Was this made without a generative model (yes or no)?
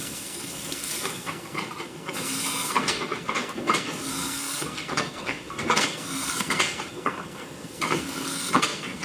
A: no